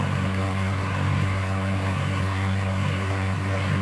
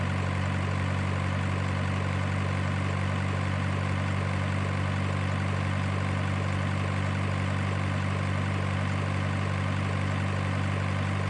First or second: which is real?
second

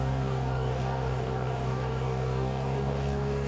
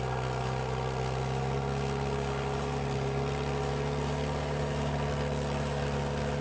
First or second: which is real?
second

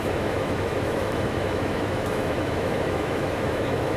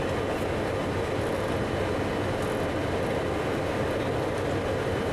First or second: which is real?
second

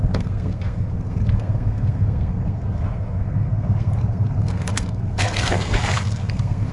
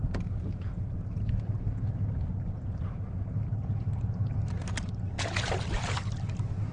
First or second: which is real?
second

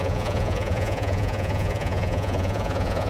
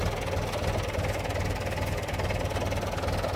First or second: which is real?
second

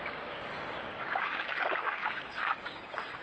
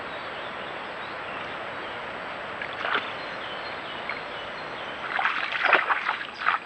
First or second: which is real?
second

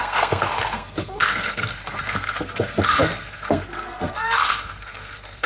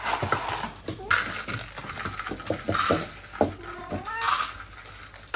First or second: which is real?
second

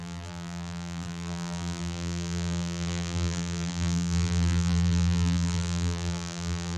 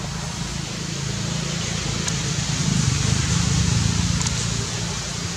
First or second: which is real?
second